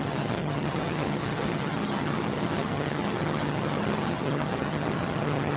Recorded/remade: remade